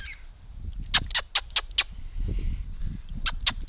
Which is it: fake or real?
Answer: real